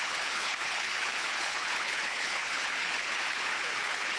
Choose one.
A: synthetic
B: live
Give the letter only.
A